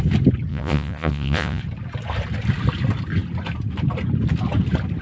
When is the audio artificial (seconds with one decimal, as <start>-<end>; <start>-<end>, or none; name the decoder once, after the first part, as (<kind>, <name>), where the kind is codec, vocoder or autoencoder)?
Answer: 0.5-1.6 (vocoder, Vocos)